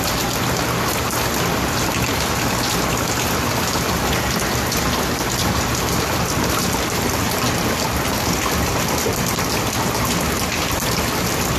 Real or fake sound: real